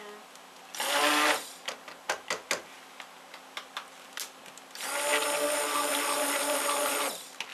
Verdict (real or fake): real